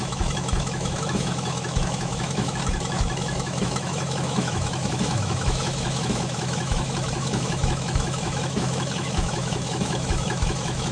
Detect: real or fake fake